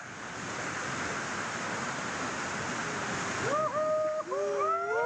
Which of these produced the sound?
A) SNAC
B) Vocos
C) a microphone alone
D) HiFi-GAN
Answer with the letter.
C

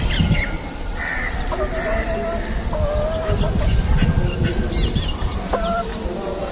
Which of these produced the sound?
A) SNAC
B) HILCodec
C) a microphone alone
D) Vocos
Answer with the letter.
C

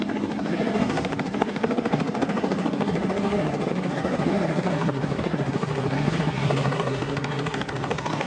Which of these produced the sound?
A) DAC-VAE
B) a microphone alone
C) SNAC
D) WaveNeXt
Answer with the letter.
C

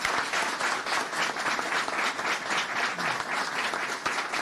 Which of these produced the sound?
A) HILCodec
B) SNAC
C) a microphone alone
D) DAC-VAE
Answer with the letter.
C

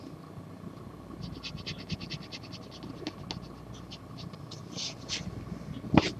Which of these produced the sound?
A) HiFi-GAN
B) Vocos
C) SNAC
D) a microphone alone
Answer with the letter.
D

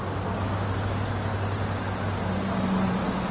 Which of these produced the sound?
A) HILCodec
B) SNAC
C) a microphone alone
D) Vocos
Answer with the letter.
C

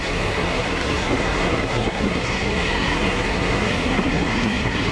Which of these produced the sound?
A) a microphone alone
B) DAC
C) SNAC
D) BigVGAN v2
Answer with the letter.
C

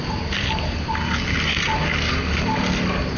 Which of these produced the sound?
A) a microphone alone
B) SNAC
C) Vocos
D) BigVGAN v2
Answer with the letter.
A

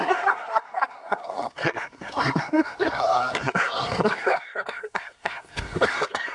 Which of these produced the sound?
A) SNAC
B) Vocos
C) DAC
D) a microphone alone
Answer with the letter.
A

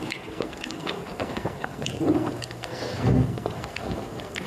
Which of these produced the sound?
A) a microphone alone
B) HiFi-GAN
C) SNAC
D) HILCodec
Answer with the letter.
C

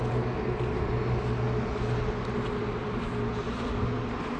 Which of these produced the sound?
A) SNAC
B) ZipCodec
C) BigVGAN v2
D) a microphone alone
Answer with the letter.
D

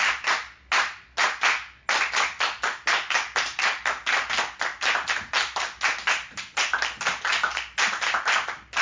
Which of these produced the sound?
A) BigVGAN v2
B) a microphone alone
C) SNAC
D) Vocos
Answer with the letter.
B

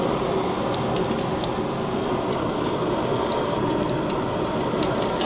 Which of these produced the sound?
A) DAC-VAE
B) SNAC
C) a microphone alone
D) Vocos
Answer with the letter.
C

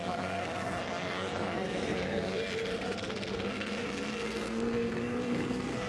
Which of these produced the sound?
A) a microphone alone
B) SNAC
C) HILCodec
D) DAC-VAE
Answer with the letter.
B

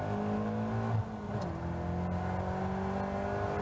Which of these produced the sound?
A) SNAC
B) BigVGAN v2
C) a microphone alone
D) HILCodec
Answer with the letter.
C